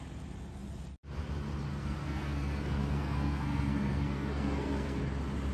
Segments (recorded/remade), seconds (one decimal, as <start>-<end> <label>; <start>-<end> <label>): 0.0-1.7 recorded; 1.7-5.0 remade; 5.0-5.5 recorded

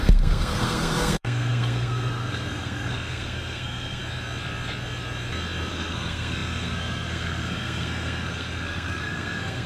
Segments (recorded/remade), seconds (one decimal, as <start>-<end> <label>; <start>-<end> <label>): 0.0-4.0 remade; 4.0-5.7 recorded; 5.7-9.7 remade

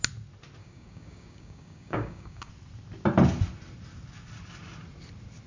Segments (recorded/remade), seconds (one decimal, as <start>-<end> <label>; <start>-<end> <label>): 0.0-0.6 recorded; 0.6-2.5 remade; 2.5-5.5 recorded

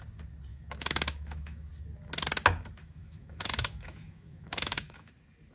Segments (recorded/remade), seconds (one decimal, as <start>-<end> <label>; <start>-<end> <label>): 0.0-0.5 recorded; 0.5-1.7 remade; 1.7-2.8 recorded; 2.8-5.1 remade; 5.1-5.5 recorded

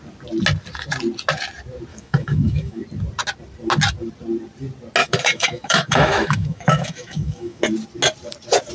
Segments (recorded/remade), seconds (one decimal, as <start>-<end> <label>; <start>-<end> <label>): 0.0-1.9 recorded; 1.9-2.8 remade; 2.8-5.0 recorded; 5.0-7.6 remade; 7.6-8.7 recorded

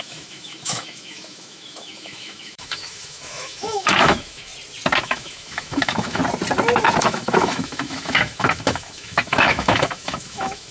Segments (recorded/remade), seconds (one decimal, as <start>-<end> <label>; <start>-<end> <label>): 0.0-4.5 remade; 4.5-5.0 recorded; 5.0-6.2 remade; 6.2-7.0 recorded; 7.0-10.7 remade

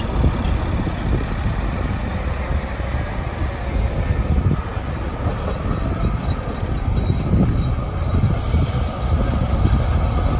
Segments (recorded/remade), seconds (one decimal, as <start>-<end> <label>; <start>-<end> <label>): 0.0-10.4 recorded

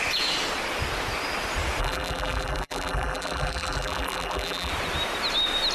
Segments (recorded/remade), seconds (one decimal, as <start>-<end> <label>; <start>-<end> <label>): 0.0-1.8 recorded; 1.8-4.7 remade; 4.7-5.7 recorded